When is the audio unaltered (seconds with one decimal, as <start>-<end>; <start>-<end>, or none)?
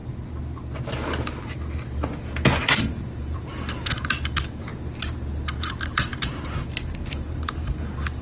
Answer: 0.0-2.8; 4.7-5.4